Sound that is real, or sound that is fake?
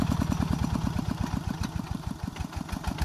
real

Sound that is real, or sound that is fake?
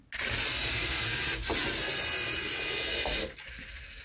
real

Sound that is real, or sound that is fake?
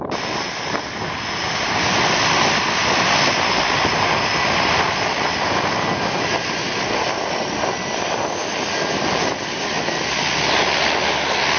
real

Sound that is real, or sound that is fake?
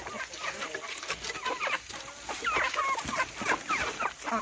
real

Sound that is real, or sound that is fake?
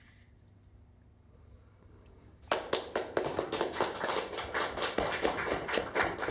real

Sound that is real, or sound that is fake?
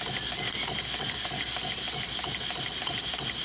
real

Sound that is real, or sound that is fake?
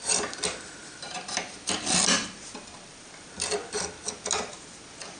real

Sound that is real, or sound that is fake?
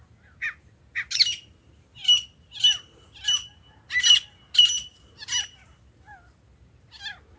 real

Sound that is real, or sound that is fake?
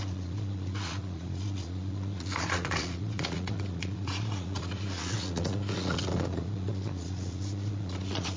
fake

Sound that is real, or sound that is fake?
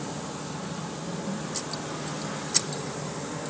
real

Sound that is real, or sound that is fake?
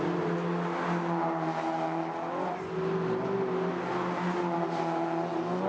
real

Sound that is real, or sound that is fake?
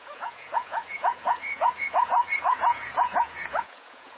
fake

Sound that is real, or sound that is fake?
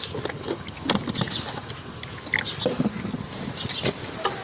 real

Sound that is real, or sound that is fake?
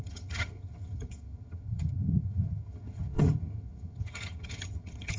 fake